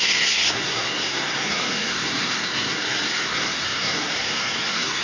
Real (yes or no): no